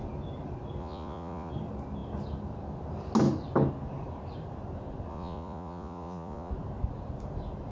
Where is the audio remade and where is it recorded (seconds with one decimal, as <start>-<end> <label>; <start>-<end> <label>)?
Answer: 0.0-0.8 recorded; 0.8-1.5 remade; 1.5-5.1 recorded; 5.1-6.5 remade; 6.5-7.7 recorded